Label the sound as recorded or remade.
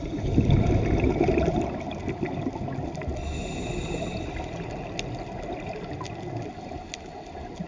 recorded